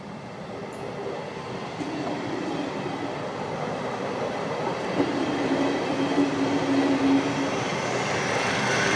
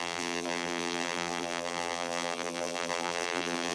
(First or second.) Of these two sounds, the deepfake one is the second